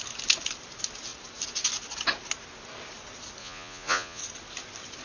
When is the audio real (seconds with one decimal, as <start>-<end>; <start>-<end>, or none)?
0.0-3.4; 4.2-5.0

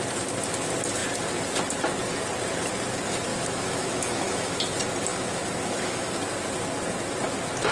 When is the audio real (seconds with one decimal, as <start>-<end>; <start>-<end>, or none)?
0.0-3.3; 4.6-5.1; 6.1-7.7